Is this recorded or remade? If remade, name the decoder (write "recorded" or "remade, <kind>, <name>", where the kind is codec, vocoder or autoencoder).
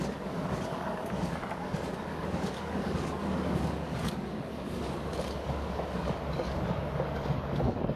remade, codec, DAC